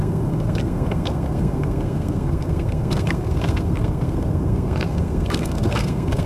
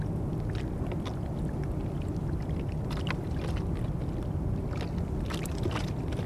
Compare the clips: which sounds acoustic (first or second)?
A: second